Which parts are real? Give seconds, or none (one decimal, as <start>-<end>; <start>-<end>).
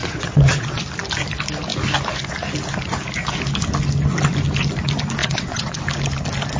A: 0.8-5.2; 5.8-6.6